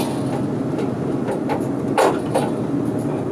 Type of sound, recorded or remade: recorded